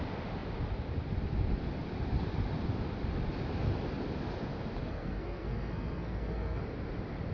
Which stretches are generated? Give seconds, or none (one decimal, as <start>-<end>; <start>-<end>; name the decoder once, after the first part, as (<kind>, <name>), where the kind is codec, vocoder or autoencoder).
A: 4.8-6.6 (codec, SNAC)